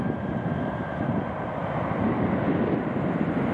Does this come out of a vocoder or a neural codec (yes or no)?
no